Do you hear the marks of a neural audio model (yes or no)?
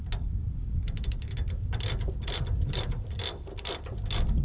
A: no